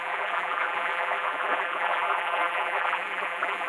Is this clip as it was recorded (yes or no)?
no